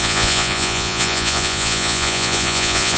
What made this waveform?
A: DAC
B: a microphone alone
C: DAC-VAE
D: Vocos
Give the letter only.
D